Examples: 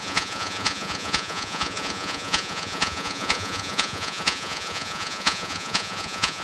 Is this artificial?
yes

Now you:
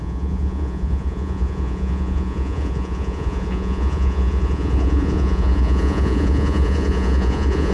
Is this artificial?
yes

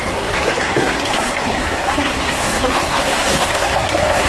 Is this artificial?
yes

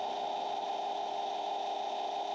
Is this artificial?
no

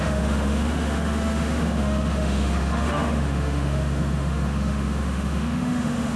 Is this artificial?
yes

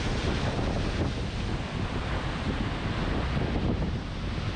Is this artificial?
no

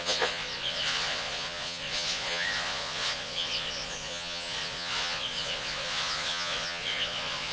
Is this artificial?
yes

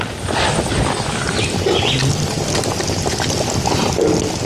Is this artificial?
no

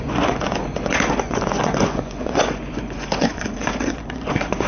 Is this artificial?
yes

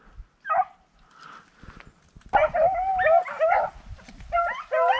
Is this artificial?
no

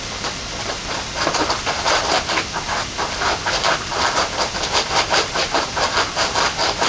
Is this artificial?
yes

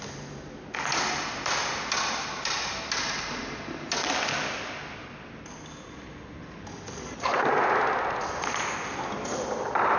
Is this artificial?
no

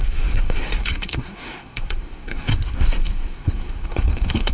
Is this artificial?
yes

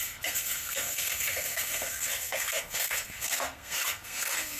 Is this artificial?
yes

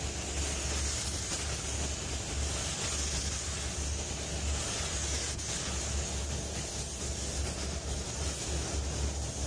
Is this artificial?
no